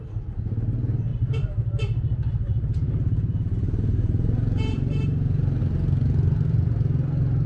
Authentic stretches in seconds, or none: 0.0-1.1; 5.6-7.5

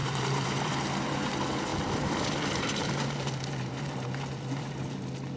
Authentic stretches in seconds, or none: 0.7-1.7; 4.7-5.4

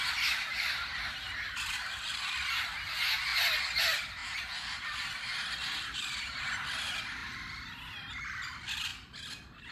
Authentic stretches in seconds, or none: 0.0-7.2; 7.8-9.7